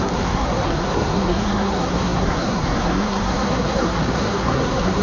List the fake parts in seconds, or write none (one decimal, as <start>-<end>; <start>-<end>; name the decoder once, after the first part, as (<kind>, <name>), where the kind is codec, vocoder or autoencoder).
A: 0.0-5.0 (codec, SNAC)